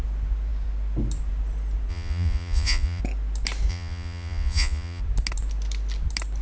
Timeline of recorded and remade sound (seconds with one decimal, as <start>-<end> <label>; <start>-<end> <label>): 0.0-1.9 recorded; 1.9-3.0 remade; 3.0-3.7 recorded; 3.7-5.0 remade; 5.0-6.4 recorded